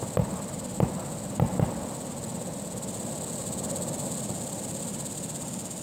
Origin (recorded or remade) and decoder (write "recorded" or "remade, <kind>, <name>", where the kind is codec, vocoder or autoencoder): recorded